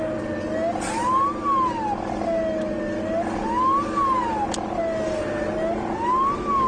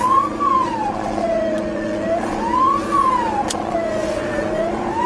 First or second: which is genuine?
first